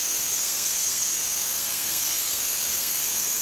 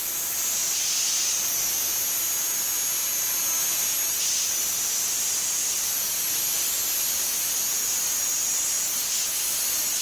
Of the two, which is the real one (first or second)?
second